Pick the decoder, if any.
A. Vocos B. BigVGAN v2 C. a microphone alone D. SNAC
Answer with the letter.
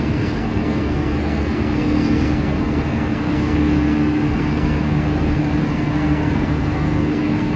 D